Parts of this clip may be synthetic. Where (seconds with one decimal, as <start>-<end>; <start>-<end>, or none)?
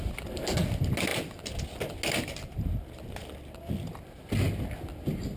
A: none